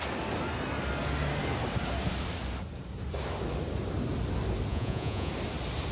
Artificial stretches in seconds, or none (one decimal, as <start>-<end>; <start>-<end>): 4.7-5.3